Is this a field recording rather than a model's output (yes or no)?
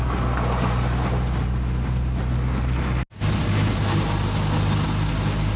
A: yes